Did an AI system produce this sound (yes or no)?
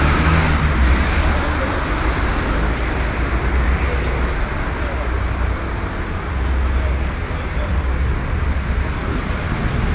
no